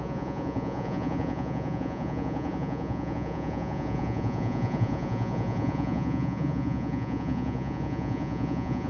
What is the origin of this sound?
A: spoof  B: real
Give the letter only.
A